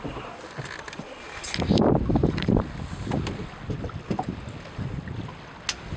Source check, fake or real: real